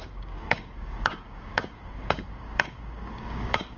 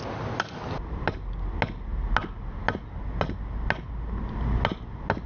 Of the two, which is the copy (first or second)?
first